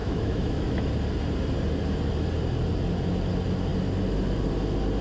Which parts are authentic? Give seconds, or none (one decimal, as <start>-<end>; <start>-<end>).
0.9-5.0